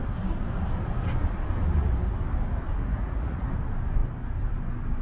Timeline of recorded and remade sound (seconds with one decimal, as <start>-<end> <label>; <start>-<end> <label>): 0.0-2.8 recorded; 2.8-3.5 remade; 3.5-5.0 recorded